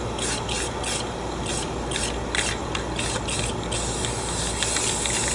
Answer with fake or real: real